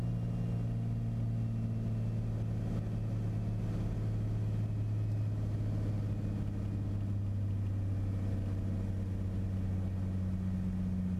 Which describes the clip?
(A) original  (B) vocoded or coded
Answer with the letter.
A